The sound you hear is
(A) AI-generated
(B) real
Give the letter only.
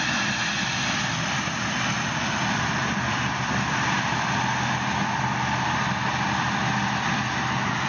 B